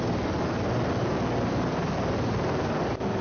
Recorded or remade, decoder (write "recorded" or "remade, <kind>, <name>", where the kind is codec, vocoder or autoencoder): recorded